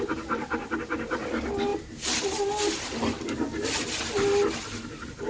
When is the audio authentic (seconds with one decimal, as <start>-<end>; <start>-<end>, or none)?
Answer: 0.0-5.3